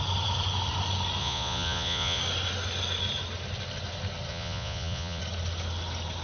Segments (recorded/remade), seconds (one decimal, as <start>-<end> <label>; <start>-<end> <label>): 0.0-1.2 recorded; 1.2-2.2 remade; 2.2-4.3 recorded; 4.3-5.2 remade; 5.2-6.2 recorded